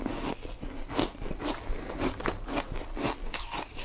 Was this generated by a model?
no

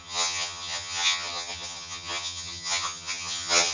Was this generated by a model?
yes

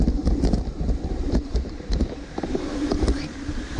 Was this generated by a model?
yes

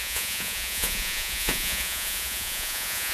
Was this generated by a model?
yes